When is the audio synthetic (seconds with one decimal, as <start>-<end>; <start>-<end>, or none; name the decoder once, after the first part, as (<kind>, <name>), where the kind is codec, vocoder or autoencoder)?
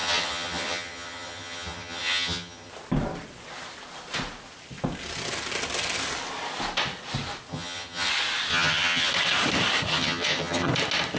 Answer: 0.0-2.7 (vocoder, HiFi-GAN); 7.5-8.1; 8.5-9.1; 9.9-10.7